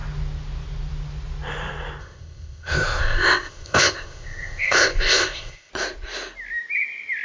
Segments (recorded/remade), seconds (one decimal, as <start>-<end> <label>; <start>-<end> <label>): 0.0-2.0 recorded; 2.0-5.7 remade; 5.7-7.2 recorded